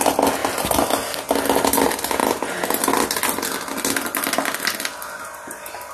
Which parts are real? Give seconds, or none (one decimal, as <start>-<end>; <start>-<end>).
0.0-5.9